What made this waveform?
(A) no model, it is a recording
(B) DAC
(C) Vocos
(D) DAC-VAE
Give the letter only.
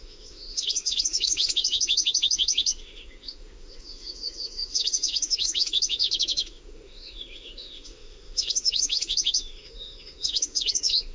D